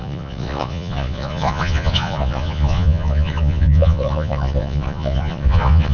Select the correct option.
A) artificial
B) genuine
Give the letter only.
A